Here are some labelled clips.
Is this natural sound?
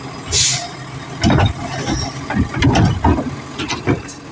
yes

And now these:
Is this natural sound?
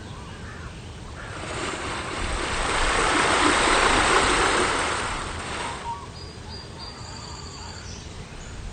no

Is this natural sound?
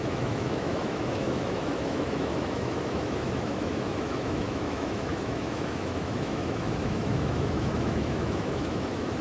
no